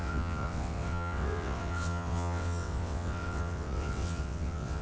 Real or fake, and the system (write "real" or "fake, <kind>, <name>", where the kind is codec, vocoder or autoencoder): fake, vocoder, WaveNeXt